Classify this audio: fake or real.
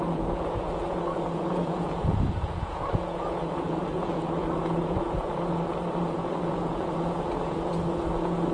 fake